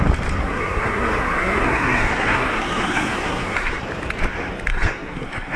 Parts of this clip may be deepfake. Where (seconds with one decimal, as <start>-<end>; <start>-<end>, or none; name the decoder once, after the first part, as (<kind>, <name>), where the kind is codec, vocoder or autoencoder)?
0.4-3.8 (codec, SNAC); 4.7-5.6